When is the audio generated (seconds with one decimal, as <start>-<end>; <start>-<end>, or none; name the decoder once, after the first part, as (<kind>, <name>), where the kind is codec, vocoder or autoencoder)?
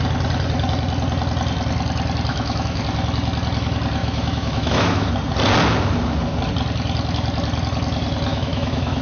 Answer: 2.3-2.8 (autoencoder, DAC-VAE); 4.0-5.1; 8.3-9.0